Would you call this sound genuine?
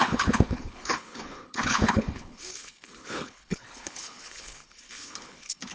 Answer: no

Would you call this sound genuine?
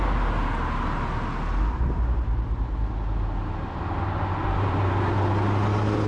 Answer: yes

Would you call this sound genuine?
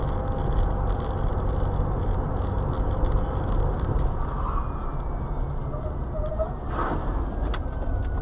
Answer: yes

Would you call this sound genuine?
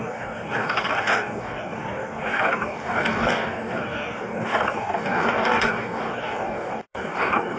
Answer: no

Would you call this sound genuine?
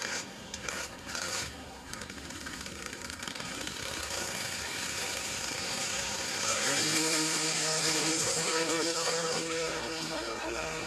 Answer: no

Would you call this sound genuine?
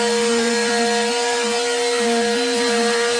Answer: yes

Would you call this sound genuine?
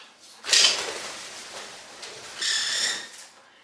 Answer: yes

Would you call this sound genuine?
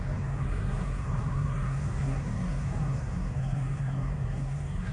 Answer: no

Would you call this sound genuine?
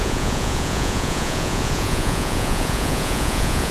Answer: no